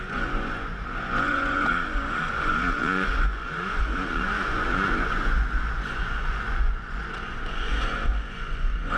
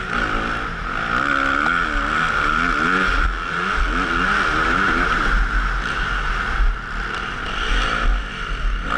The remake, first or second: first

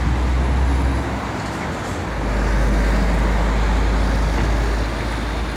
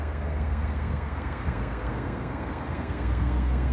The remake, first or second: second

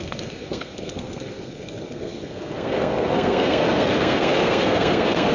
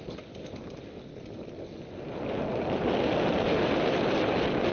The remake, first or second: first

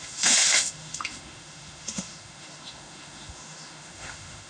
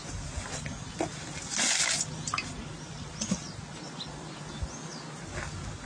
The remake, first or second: first